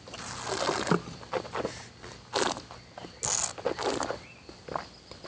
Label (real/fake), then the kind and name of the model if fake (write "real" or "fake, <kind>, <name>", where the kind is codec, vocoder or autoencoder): real